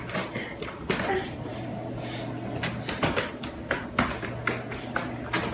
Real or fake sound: real